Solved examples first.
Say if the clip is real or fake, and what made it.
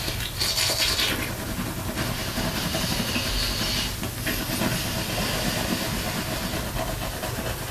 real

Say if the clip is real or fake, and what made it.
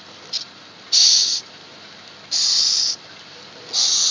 real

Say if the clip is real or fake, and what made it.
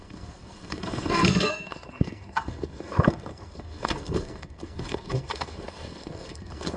fake, codec, SNAC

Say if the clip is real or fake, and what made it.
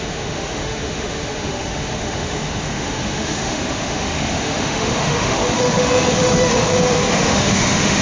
fake, autoencoder, DAC-VAE